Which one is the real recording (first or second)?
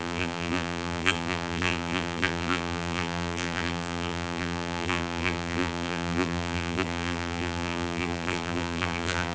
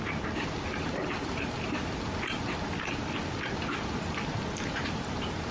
second